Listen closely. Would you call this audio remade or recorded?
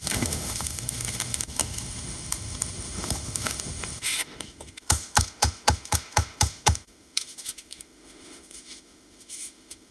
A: remade